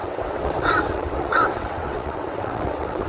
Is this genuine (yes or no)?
no